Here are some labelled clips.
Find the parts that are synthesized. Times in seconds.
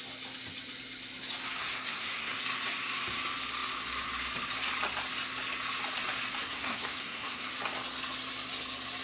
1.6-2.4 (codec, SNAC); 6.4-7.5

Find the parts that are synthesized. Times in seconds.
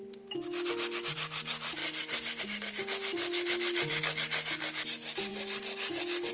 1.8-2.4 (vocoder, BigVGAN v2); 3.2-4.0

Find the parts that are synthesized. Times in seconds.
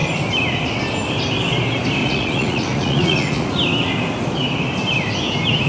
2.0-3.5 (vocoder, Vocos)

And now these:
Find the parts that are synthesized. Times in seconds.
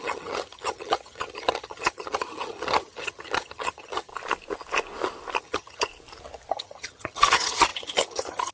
0.0-4.1 (vocoder, HiFi-GAN); 5.4-5.9; 6.5-8.5